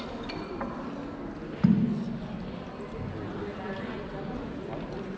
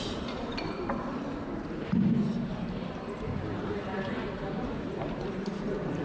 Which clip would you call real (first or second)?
first